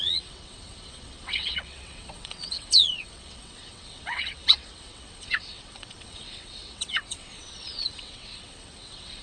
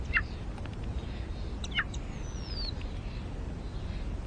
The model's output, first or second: first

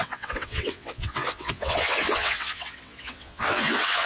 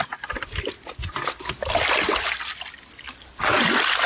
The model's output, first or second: first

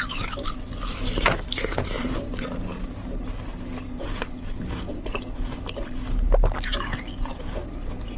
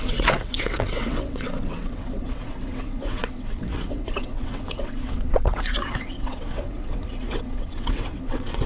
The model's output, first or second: second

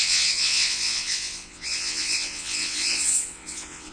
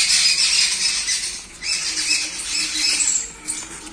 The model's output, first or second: first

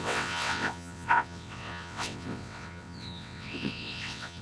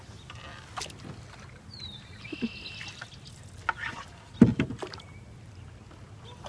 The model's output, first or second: first